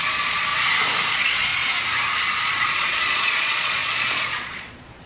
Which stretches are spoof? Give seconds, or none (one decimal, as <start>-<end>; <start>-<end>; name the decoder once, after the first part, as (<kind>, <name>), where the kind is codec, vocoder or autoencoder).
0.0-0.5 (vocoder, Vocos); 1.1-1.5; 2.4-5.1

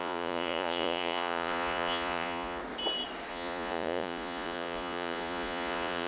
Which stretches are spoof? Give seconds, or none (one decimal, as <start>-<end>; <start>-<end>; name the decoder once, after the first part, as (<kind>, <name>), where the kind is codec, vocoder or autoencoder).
0.0-2.6 (vocoder, Vocos); 3.3-6.1

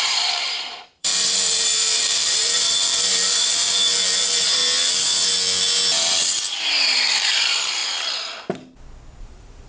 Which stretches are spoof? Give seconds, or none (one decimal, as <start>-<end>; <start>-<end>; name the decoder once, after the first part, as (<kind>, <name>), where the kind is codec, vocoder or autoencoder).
0.0-4.6 (vocoder, BigVGAN v2); 6.6-7.8; 9.2-9.7